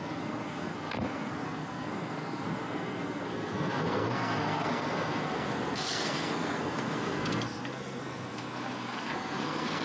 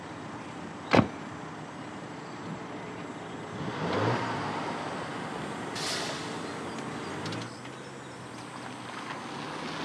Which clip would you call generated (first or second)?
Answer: first